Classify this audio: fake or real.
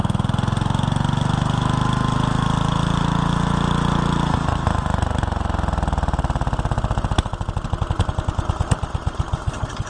real